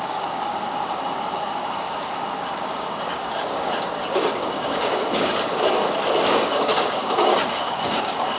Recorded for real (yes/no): no